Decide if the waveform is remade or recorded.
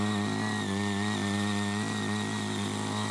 recorded